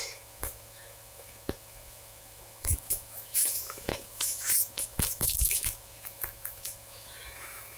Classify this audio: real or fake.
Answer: fake